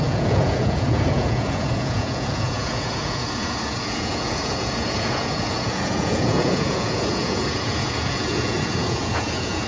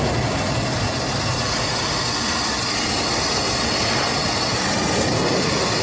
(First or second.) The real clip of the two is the second